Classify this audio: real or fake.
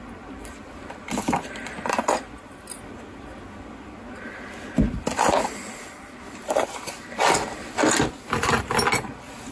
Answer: real